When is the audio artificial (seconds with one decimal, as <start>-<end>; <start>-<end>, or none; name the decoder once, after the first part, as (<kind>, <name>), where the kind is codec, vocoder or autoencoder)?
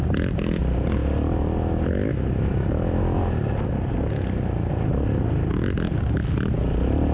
none